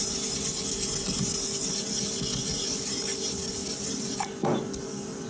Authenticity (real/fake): real